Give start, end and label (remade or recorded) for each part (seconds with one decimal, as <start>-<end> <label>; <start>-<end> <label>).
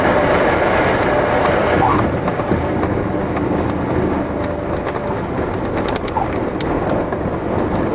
0.0-7.9 recorded